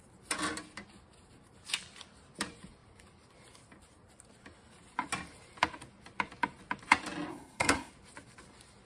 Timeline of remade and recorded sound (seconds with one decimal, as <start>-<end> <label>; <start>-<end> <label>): 0.0-7.3 recorded; 7.3-7.9 remade; 7.9-8.9 recorded